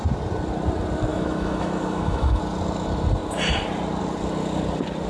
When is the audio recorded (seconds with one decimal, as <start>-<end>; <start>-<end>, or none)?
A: 0.0-1.1; 2.4-5.1

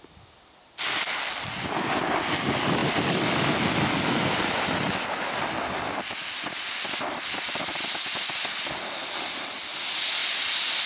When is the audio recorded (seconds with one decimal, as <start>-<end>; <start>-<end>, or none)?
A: 0.0-10.9

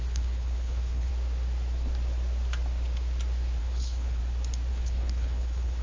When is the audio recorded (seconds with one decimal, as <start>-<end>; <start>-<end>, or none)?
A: 1.1-3.6; 4.2-4.7

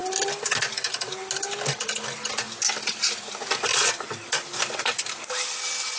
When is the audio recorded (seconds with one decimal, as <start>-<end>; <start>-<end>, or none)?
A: 0.0-6.0

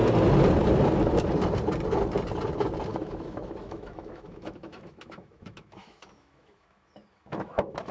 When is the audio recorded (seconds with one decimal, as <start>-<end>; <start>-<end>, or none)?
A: 0.0-2.9

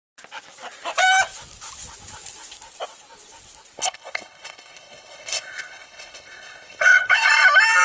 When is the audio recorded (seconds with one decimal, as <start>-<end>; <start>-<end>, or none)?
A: 0.0-3.8; 7.3-7.8

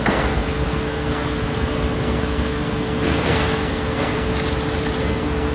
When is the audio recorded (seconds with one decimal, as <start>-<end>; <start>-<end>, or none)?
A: 4.3-5.0